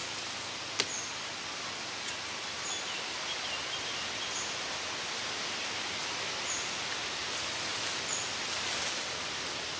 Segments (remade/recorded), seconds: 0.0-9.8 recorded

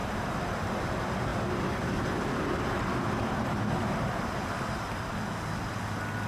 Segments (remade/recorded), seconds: 0.0-0.9 remade; 0.9-1.3 recorded; 1.3-5.1 remade; 5.1-6.3 recorded

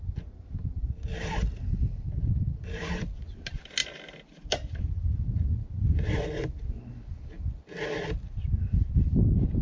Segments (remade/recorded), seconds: 0.0-9.6 recorded

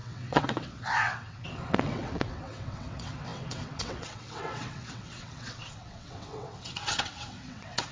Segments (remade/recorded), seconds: 0.0-7.9 remade

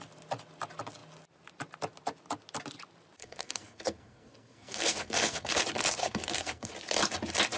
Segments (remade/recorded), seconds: 0.0-3.2 recorded; 3.2-5.6 remade; 5.6-6.0 recorded; 6.0-6.7 remade; 6.7-7.6 recorded

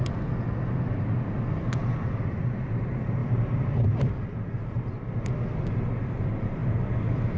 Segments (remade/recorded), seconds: 0.0-3.2 recorded; 3.2-4.2 remade; 4.2-6.6 recorded; 6.6-7.4 remade

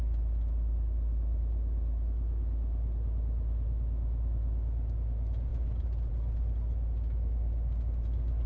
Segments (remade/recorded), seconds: 0.0-8.5 recorded